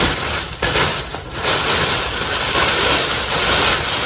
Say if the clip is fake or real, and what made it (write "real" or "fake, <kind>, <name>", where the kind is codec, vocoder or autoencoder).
real